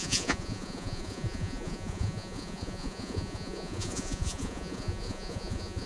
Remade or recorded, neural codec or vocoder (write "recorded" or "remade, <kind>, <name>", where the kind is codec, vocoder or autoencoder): remade, vocoder, Vocos